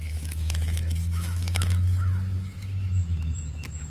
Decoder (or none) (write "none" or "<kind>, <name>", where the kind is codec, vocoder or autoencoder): autoencoder, DAC-VAE